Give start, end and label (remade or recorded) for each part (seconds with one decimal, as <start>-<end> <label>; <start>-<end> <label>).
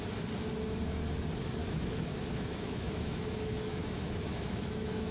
0.0-1.6 recorded; 1.6-5.1 remade